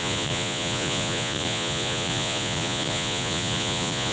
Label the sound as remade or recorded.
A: remade